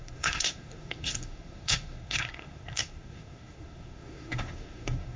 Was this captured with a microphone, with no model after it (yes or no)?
no